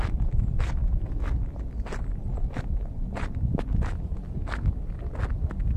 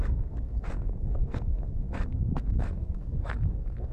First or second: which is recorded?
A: first